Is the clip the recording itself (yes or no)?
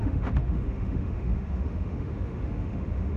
no